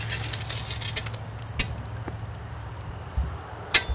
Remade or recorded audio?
recorded